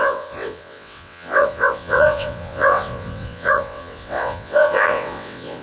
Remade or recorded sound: remade